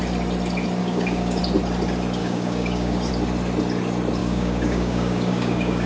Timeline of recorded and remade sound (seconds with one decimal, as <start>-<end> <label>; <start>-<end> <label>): 0.0-0.8 recorded; 0.8-1.4 remade; 1.4-2.2 recorded; 2.2-3.1 remade; 3.1-4.2 recorded; 4.2-5.9 remade